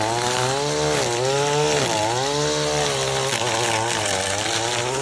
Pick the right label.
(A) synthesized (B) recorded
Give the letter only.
B